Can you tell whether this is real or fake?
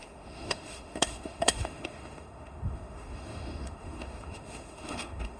fake